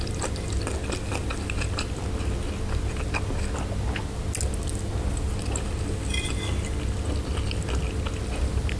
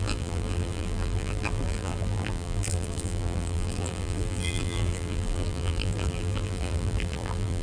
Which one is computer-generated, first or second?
second